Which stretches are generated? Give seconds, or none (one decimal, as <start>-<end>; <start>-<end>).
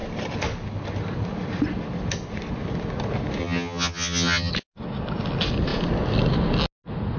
3.4-4.5